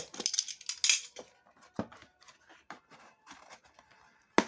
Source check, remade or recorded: recorded